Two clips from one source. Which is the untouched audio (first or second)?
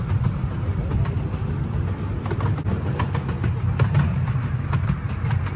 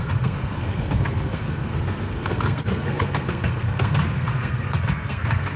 first